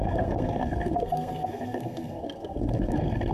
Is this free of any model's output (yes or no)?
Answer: no